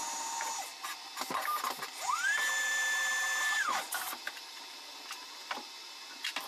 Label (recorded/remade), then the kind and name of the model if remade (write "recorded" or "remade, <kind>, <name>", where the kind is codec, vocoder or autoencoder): remade, vocoder, BigVGAN v2